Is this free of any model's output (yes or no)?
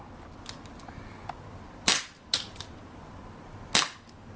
yes